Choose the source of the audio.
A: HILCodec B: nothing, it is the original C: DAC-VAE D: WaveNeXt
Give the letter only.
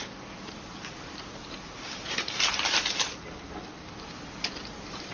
B